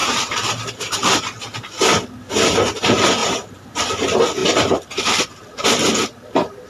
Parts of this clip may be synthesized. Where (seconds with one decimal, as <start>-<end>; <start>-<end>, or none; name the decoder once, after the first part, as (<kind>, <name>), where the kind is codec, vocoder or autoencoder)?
0.0-1.4 (vocoder, BigVGAN v2); 3.2-3.8; 4.4-5.0